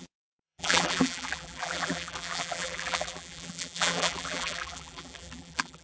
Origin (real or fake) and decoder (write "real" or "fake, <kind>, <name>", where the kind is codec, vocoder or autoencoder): fake, vocoder, BigVGAN v2